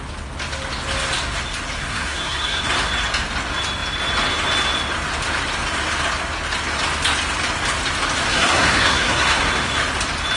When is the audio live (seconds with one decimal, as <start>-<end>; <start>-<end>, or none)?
0.0-1.8; 2.6-8.3; 9.4-10.4